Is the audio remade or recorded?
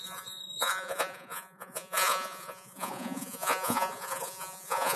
remade